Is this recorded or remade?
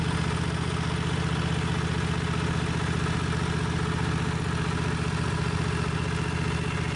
recorded